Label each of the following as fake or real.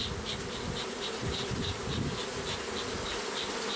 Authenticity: real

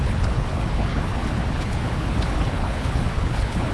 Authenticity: fake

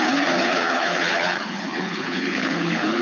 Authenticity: fake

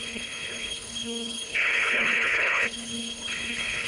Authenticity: fake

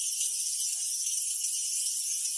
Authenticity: real